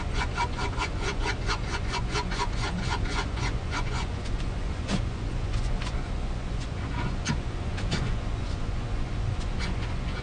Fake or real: fake